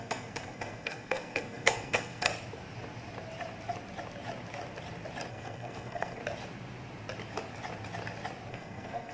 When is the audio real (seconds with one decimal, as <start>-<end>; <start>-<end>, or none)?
2.3-5.3; 6.2-8.5